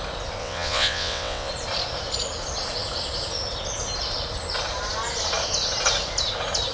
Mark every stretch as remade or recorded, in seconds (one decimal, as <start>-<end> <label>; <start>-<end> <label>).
0.0-0.4 recorded; 0.4-1.5 remade; 1.5-6.7 recorded